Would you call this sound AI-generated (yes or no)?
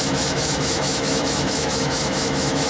yes